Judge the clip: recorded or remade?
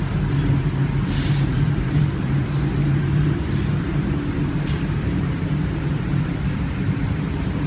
remade